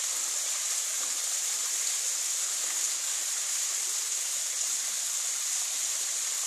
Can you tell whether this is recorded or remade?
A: remade